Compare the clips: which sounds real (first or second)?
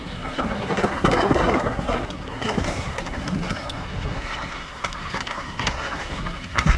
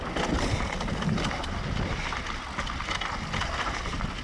second